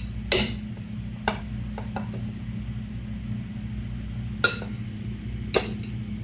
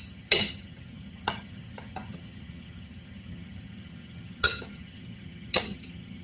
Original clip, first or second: first